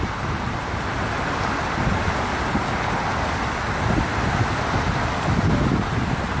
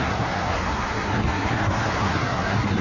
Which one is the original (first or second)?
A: first